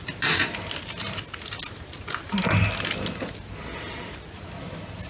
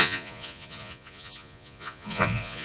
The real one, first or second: first